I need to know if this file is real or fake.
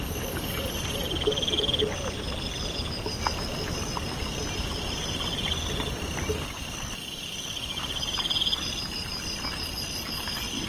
real